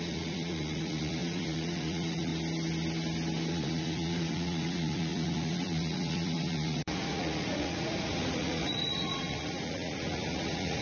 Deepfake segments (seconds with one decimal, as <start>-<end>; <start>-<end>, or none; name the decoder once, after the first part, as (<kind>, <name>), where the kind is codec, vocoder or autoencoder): 0.0-2.3 (vocoder, Vocos); 3.5-10.8

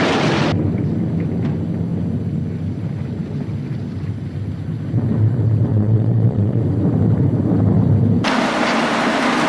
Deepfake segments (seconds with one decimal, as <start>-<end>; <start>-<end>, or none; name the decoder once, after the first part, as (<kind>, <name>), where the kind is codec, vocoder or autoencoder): 5.7-6.6 (vocoder, Vocos)